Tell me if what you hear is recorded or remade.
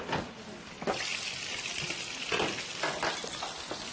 recorded